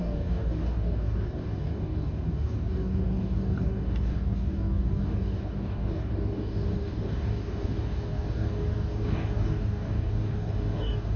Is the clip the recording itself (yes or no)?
no